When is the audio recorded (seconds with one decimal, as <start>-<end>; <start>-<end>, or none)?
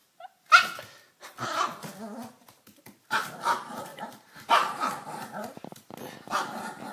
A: 0.0-2.4; 3.3-3.9; 6.0-6.9